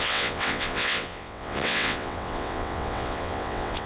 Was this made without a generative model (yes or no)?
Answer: no